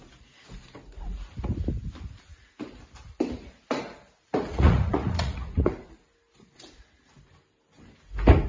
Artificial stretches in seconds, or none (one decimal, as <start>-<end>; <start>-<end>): 4.5-5.7